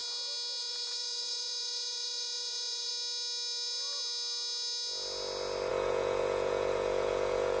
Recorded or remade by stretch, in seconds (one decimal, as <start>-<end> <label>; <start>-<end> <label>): 0.0-0.6 recorded; 0.6-2.9 remade; 2.9-5.7 recorded; 5.7-7.6 remade